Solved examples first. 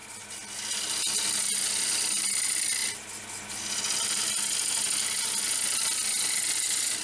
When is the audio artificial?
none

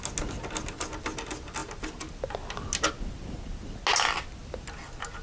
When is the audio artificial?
none

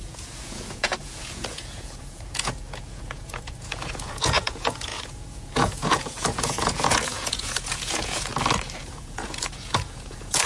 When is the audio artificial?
0.0-8.3 (vocoder, Vocos); 8.8-10.5

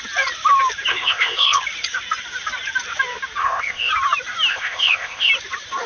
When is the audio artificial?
0.9-1.6 (codec, ZipCodec); 3.4-3.9; 4.5-5.3

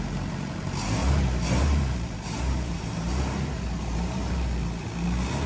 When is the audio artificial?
1.0-4.3 (vocoder, BigVGAN v2)